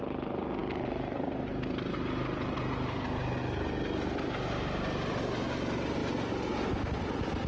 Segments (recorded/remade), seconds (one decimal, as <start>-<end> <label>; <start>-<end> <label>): 0.0-7.5 recorded